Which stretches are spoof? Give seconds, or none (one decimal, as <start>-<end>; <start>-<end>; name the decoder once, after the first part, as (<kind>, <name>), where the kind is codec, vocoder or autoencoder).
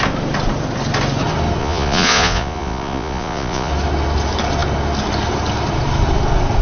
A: 1.6-3.7 (vocoder, Vocos)